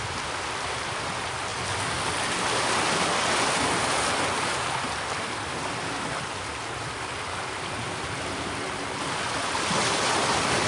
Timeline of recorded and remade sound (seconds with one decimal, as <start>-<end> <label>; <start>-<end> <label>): 0.0-10.7 recorded